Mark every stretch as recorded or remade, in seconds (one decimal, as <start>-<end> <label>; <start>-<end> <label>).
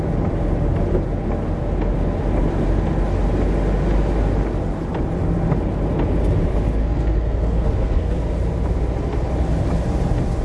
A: 0.0-6.8 recorded; 6.8-8.2 remade; 8.2-10.4 recorded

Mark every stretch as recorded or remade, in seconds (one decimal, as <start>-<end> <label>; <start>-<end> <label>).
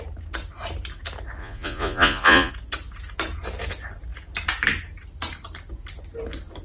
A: 0.0-1.4 recorded; 1.4-2.5 remade; 2.5-6.6 recorded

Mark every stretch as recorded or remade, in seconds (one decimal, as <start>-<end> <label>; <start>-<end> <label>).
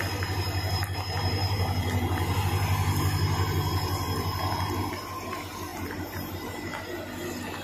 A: 0.0-1.4 recorded; 1.4-2.4 remade; 2.4-5.7 recorded; 5.7-6.5 remade; 6.5-7.6 recorded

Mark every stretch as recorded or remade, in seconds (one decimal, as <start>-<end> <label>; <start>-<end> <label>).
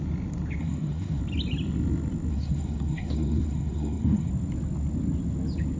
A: 0.0-0.6 recorded; 0.6-1.2 remade; 1.2-2.3 recorded; 2.3-4.3 remade; 4.3-5.8 recorded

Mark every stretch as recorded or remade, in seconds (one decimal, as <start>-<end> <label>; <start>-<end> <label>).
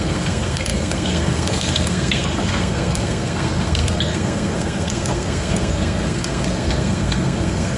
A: 0.0-7.8 remade